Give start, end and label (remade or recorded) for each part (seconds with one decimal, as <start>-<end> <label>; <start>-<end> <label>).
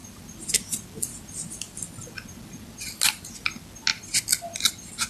0.0-5.1 recorded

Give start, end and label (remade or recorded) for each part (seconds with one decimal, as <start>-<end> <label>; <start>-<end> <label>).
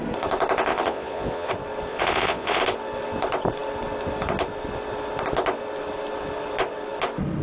0.0-0.7 recorded; 0.7-1.5 remade; 1.5-1.9 recorded; 1.9-2.6 remade; 2.6-7.4 recorded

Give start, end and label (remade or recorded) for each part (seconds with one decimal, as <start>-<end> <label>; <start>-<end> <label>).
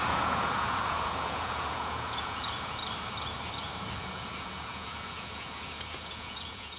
0.0-2.8 remade; 2.8-4.0 recorded; 4.0-6.8 remade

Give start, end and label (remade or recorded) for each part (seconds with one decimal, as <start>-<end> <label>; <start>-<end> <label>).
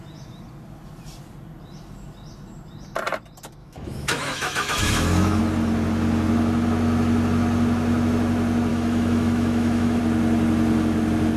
0.0-3.6 recorded; 3.6-5.4 remade; 5.4-8.7 recorded; 8.7-10.0 remade; 10.0-11.4 recorded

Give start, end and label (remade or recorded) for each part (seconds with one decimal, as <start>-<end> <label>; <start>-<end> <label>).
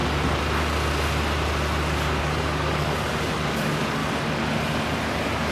0.0-2.2 recorded; 2.2-4.0 remade; 4.0-5.1 recorded; 5.1-5.5 remade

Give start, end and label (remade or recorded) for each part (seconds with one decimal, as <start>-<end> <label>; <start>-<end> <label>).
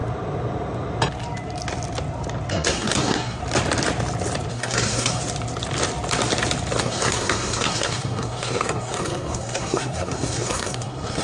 0.0-2.5 recorded; 2.5-3.4 remade; 3.4-4.5 recorded; 4.5-5.2 remade; 5.2-6.8 recorded; 6.8-11.2 remade